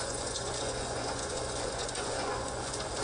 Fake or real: fake